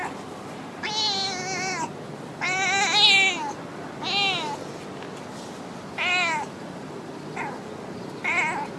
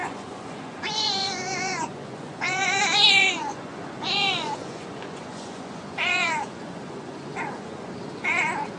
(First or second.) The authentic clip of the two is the first